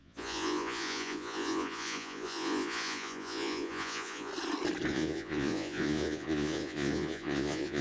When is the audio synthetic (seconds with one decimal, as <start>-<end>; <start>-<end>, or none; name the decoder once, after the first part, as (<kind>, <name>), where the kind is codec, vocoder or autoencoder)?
0.0-4.3 (vocoder, Vocos); 4.9-7.8